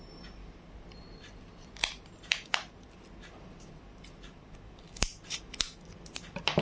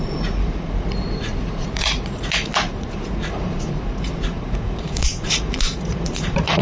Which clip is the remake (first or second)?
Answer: second